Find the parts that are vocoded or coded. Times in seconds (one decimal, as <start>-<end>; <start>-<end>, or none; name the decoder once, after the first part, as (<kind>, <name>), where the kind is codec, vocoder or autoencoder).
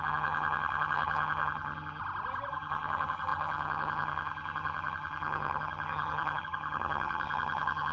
0.0-2.0 (vocoder, HiFi-GAN); 2.5-7.9